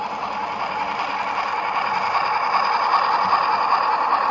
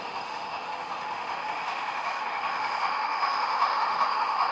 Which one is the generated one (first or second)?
second